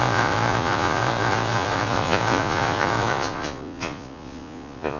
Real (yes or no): no